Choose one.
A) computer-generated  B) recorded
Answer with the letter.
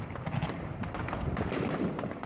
B